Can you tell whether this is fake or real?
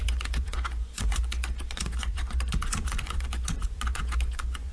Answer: fake